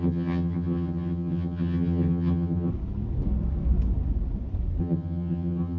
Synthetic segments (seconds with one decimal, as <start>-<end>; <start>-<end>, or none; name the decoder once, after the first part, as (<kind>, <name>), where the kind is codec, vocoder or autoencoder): 0.0-2.7 (vocoder, HiFi-GAN); 4.8-5.8